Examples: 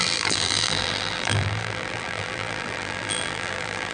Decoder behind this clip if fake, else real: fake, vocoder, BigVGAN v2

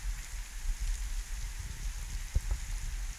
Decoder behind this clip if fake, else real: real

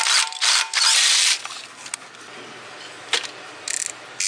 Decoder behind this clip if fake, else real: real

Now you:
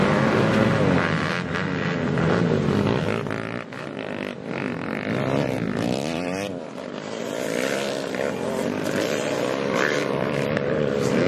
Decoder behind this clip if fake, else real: real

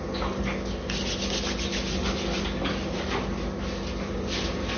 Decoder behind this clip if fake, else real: real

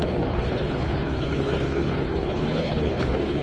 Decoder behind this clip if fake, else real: fake, codec, HILCodec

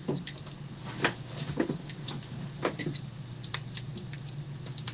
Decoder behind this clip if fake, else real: real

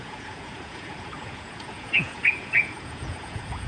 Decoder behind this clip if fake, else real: fake, vocoder, Vocos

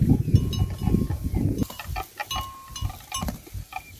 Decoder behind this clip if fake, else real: real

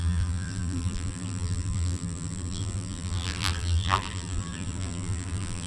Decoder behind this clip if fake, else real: fake, vocoder, BigVGAN v2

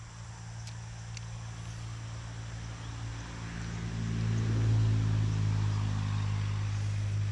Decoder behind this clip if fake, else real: real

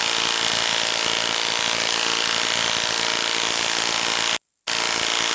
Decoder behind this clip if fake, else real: real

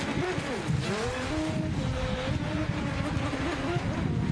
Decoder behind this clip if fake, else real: real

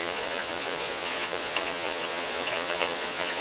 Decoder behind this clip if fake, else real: fake, vocoder, Vocos